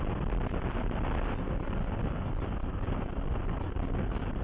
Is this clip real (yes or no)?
yes